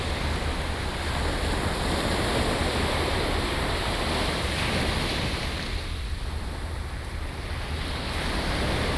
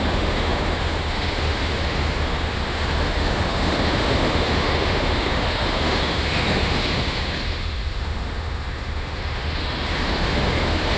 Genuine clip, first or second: first